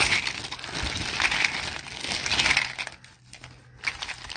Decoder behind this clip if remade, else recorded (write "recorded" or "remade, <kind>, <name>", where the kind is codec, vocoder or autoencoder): recorded